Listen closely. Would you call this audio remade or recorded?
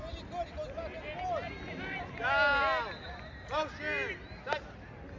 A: recorded